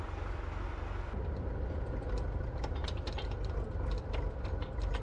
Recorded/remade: recorded